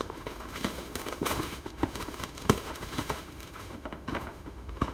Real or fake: fake